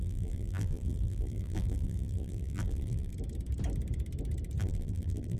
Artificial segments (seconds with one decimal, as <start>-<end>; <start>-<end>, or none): 0.0-3.1; 4.6-5.4